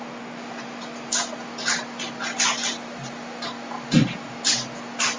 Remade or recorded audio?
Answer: recorded